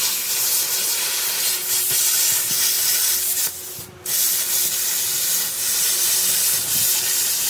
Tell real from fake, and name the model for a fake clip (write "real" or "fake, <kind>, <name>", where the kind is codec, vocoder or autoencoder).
real